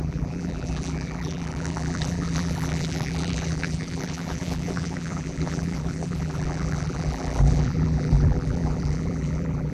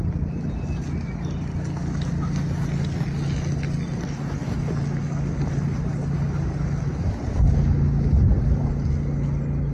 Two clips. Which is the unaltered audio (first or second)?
second